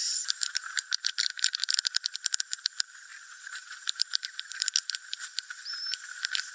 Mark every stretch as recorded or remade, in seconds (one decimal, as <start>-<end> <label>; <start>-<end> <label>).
0.0-1.6 remade; 1.6-2.4 recorded; 2.4-6.5 remade